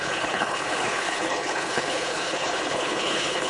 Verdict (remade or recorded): remade